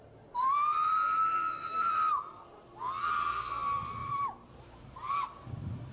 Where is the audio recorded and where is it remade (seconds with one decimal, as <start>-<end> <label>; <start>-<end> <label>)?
0.0-4.0 recorded; 4.0-5.1 remade; 5.1-5.9 recorded